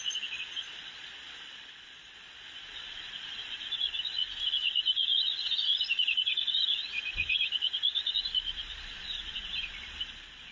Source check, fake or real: fake